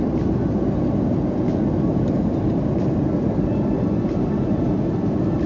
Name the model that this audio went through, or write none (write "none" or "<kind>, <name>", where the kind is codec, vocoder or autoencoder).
none